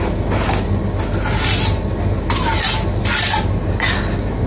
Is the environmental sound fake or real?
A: real